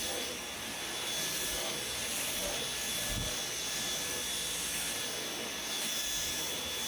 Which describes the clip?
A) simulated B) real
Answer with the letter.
B